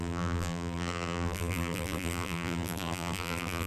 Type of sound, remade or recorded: remade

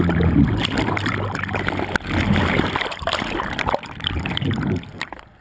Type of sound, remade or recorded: remade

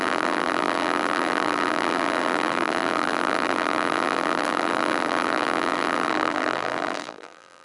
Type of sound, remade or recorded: remade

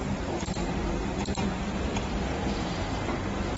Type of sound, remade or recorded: remade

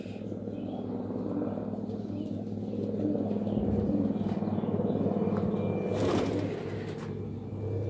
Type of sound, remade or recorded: recorded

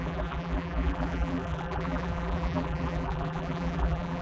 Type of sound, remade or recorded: remade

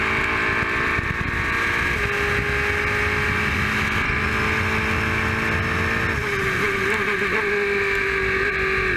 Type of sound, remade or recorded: recorded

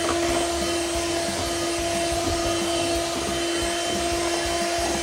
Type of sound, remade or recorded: recorded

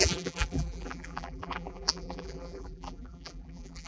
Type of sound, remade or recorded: remade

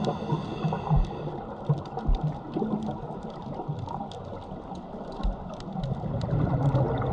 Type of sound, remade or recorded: recorded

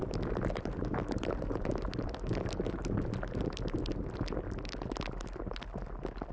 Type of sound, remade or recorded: recorded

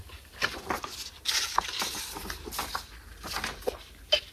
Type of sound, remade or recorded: recorded